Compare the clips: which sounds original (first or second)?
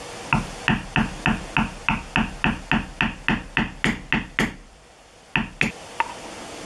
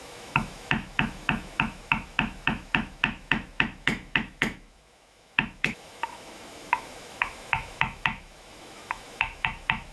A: first